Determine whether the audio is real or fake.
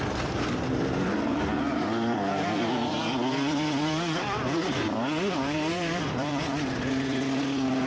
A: fake